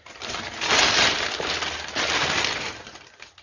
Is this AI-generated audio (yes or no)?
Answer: no